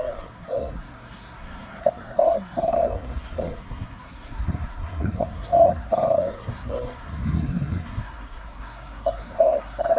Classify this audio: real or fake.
fake